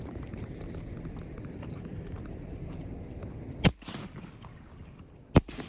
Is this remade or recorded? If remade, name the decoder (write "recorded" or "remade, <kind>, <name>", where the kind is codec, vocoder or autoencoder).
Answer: remade, vocoder, BigVGAN v2